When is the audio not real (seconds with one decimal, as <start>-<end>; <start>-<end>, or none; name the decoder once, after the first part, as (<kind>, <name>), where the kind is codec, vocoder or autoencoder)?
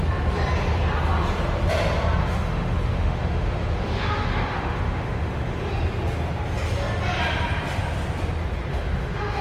2.2-5.7 (autoencoder, DAC-VAE); 8.7-9.4